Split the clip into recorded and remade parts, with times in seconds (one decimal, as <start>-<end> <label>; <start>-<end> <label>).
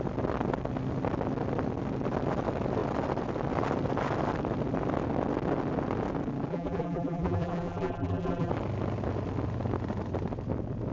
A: 0.0-6.5 recorded; 6.5-8.5 remade; 8.5-10.9 recorded